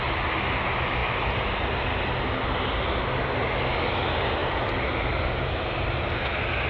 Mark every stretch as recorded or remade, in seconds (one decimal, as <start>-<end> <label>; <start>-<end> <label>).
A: 0.0-6.7 recorded